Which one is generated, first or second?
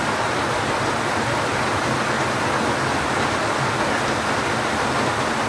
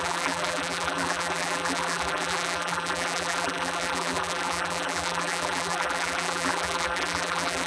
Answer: second